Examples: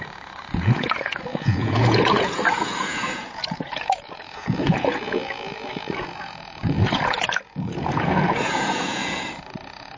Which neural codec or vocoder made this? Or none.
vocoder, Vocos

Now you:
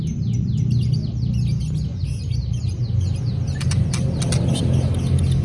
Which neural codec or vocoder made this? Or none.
none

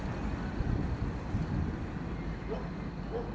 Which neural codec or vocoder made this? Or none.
none